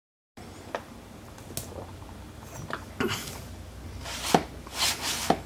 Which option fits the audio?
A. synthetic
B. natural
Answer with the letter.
B